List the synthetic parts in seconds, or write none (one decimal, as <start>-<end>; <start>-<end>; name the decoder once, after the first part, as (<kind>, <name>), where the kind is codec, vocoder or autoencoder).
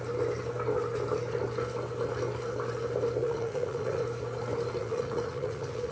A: 3.2-4.0 (vocoder, Vocos); 4.8-5.9